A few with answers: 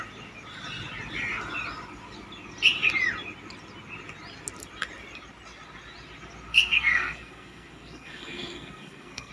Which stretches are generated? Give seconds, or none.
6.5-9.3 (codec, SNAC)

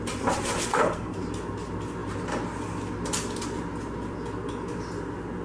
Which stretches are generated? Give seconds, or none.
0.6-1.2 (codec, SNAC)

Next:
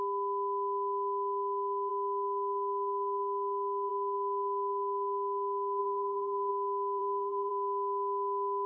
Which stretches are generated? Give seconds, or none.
5.8-6.5 (codec, SNAC); 7.0-7.5